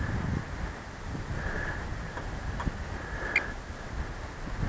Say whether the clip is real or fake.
real